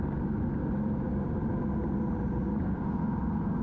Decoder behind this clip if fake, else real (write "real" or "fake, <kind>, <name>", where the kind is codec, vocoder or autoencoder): real